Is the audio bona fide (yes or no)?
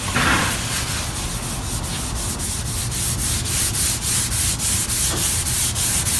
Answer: yes